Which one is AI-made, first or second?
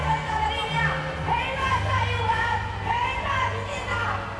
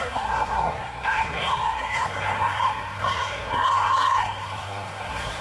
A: second